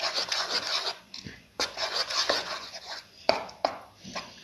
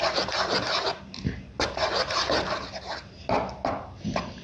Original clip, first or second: second